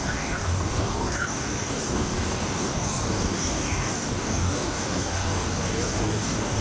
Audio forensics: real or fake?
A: fake